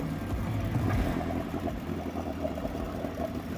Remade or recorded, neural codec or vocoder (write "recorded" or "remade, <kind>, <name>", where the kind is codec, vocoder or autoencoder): remade, vocoder, BigVGAN v2